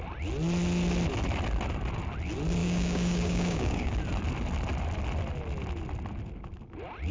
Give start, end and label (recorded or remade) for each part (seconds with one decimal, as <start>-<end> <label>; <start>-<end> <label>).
0.0-2.6 recorded; 2.6-3.9 remade; 3.9-7.1 recorded